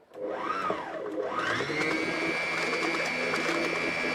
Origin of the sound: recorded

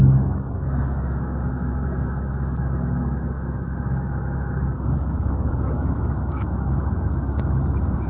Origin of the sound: remade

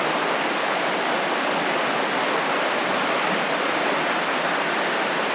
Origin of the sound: recorded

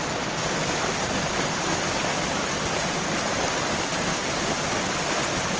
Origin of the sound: recorded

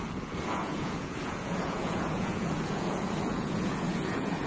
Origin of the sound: remade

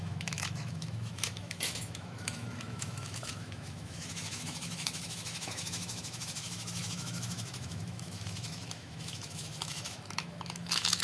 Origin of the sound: remade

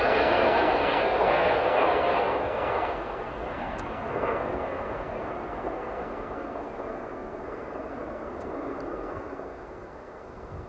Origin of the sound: remade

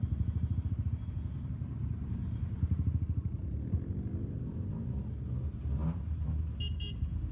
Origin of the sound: recorded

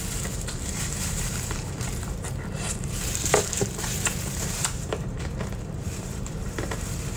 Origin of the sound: remade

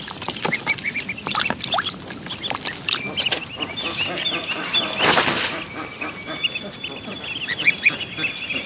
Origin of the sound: recorded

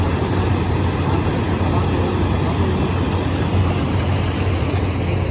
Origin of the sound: recorded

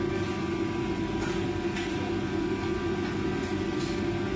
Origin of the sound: recorded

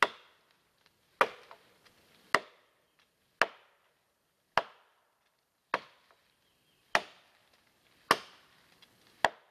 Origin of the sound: recorded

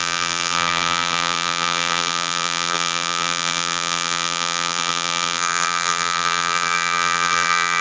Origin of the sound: remade